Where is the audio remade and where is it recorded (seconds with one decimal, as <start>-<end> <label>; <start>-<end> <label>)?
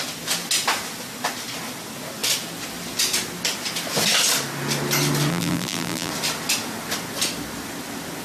0.0-5.3 recorded; 5.3-6.1 remade; 6.1-8.2 recorded